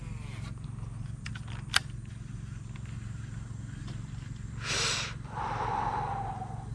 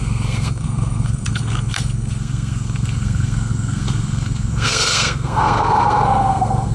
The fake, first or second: second